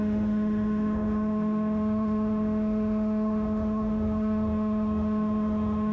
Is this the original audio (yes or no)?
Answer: no